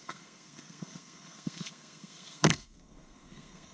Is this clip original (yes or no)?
no